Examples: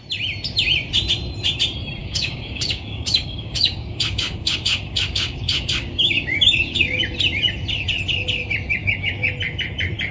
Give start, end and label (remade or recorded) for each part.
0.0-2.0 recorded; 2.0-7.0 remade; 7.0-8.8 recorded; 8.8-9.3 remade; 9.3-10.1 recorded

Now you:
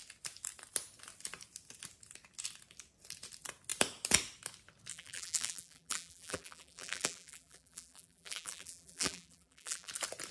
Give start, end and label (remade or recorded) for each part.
0.0-4.9 recorded; 4.9-9.9 remade; 9.9-10.3 recorded

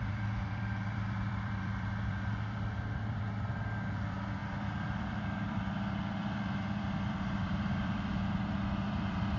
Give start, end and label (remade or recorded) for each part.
0.0-9.4 remade

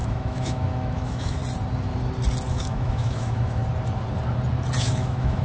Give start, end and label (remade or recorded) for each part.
0.0-1.4 remade; 1.4-2.5 recorded; 2.5-3.6 remade; 3.6-4.8 recorded; 4.8-5.4 remade

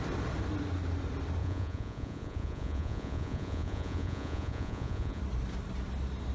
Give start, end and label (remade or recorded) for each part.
0.0-1.4 recorded; 1.4-5.2 remade; 5.2-6.3 recorded

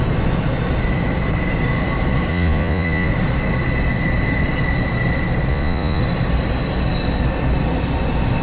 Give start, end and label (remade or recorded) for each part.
0.0-2.3 recorded; 2.3-3.1 remade; 3.1-5.5 recorded; 5.5-6.0 remade; 6.0-8.4 recorded

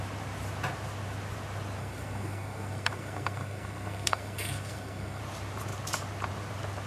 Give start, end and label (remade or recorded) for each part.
0.0-1.8 recorded; 1.8-5.2 remade; 5.2-6.9 recorded